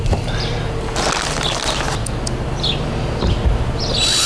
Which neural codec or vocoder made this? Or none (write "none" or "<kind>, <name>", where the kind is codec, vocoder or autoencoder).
none